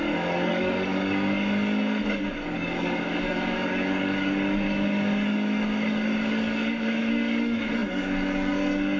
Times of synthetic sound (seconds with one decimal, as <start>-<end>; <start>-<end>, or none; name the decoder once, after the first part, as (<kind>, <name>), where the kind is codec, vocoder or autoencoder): 0.0-9.0 (codec, DAC)

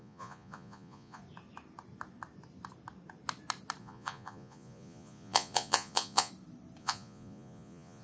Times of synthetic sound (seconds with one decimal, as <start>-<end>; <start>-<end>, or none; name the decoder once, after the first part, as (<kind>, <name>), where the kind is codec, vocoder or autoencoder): 0.0-1.2 (vocoder, Vocos); 3.8-6.3; 6.8-8.0

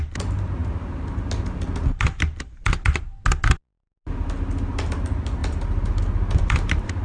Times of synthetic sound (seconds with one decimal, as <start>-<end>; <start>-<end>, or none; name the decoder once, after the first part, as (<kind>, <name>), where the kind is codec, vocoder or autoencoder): none

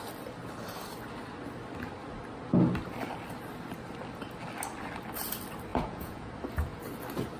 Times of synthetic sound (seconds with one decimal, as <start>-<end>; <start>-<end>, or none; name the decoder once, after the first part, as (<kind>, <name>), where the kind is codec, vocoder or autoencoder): 5.7-6.3 (vocoder, Vocos)

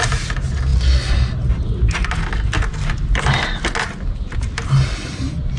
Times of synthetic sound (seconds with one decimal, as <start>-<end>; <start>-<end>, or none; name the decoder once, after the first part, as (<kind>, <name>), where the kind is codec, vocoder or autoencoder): none

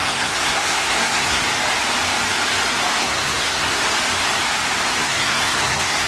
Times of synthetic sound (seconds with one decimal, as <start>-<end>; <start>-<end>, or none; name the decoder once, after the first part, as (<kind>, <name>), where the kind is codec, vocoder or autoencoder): 0.0-1.4 (codec, SNAC); 3.0-3.8; 5.0-6.1

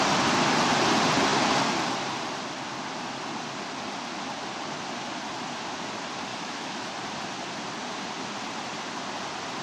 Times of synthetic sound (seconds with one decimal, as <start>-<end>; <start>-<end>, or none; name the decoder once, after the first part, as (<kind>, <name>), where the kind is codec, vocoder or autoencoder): 6.3-6.9 (autoencoder, DAC-VAE)

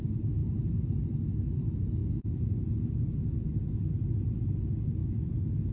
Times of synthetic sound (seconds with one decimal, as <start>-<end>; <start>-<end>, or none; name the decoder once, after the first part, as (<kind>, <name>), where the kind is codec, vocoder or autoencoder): 2.0-4.4 (vocoder, Vocos); 5.0-5.7